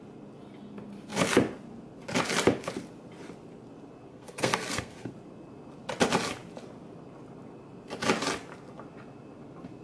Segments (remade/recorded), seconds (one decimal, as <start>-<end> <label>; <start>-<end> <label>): 0.0-4.1 recorded; 4.1-5.1 remade; 5.1-9.8 recorded